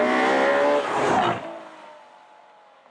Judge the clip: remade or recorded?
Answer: recorded